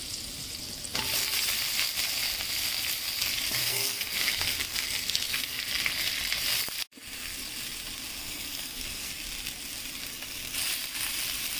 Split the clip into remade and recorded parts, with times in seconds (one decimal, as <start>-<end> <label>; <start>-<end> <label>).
0.0-3.6 recorded; 3.6-5.6 remade; 5.6-8.2 recorded; 8.2-9.1 remade; 9.1-11.6 recorded